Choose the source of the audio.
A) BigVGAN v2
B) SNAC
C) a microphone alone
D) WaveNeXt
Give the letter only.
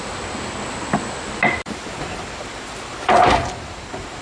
C